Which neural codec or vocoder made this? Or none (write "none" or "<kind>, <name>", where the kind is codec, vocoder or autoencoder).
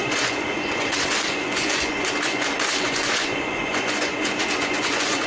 vocoder, Vocos